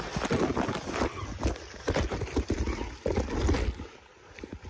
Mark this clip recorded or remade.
recorded